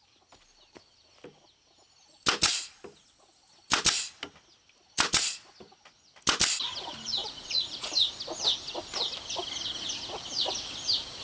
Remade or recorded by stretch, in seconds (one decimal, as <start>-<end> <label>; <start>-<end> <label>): 0.0-7.2 recorded; 7.2-8.1 remade; 8.1-11.2 recorded